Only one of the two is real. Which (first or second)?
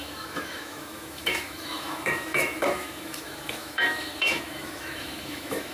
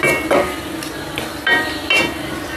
second